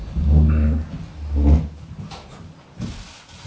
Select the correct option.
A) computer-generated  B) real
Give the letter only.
B